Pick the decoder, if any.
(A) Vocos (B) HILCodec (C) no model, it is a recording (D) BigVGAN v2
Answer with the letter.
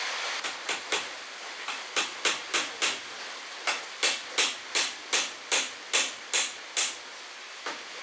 C